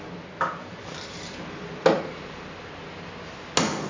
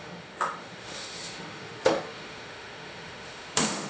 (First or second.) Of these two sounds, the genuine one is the first